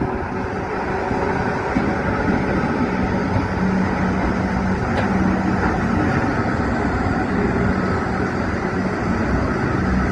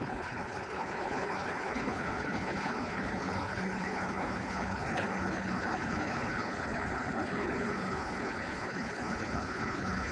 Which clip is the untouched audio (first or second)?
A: first